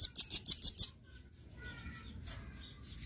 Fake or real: real